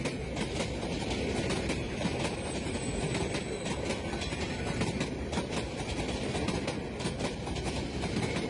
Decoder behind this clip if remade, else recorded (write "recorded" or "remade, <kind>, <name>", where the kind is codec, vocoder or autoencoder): recorded